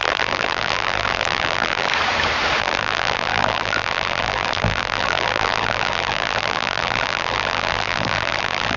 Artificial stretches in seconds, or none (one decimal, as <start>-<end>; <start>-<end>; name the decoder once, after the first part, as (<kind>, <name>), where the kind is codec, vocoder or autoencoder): 0.0-1.9 (vocoder, BigVGAN v2); 2.6-8.8